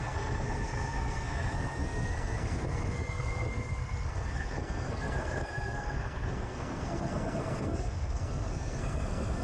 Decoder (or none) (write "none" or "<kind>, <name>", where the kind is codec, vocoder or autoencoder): codec, SNAC